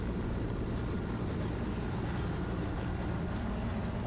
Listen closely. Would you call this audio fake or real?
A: real